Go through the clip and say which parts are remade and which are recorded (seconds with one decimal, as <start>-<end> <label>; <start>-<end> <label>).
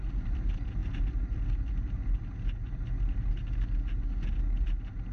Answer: 0.0-5.1 recorded